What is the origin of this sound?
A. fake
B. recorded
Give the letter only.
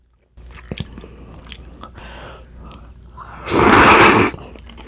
B